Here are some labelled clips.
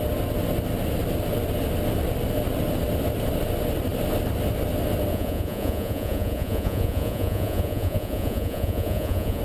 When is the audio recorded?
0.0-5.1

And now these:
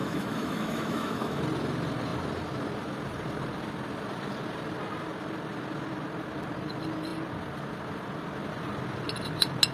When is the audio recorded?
1.4-9.7